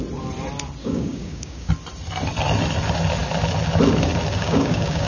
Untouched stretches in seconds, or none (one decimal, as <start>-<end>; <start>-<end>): 0.0-0.8; 1.7-4.4